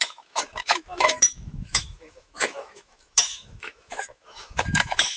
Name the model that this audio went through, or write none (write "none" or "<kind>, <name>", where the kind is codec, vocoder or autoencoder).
autoencoder, DAC-VAE